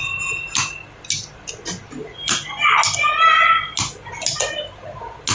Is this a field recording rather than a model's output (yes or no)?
yes